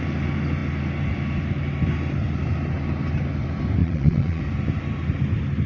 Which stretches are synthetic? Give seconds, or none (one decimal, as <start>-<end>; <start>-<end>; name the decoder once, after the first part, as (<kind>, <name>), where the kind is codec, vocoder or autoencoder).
3.8-4.4 (vocoder, Vocos)